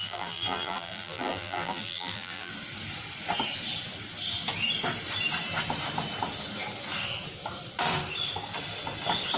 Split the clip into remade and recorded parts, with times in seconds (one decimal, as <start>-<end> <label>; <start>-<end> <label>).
0.0-2.5 remade; 2.5-9.4 recorded

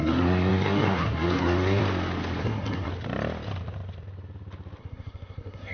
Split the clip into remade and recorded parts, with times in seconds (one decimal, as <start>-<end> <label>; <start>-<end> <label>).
0.0-1.8 remade; 1.8-2.4 recorded; 2.4-2.9 remade; 2.9-4.8 recorded; 4.8-5.7 remade

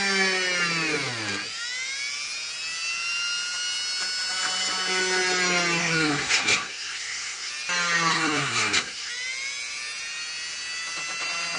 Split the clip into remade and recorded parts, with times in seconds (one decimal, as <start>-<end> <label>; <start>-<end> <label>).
0.0-5.8 recorded; 5.8-7.5 remade; 7.5-8.1 recorded; 8.1-9.1 remade; 9.1-11.6 recorded

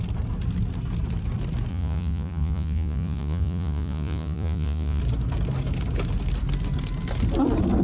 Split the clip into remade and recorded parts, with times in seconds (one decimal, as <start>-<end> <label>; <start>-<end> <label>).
0.0-1.7 recorded; 1.7-5.0 remade; 5.0-7.8 recorded

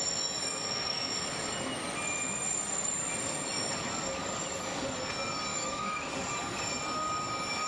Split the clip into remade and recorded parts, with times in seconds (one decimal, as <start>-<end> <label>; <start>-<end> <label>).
0.0-5.5 recorded; 5.5-6.1 remade; 6.1-7.7 recorded

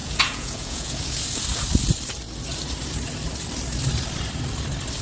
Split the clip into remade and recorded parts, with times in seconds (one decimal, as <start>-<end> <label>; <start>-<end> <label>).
0.0-1.0 remade; 1.0-5.0 recorded